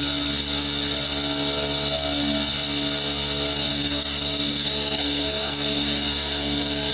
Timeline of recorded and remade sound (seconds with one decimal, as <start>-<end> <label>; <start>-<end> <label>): 0.0-3.7 recorded; 3.7-6.9 remade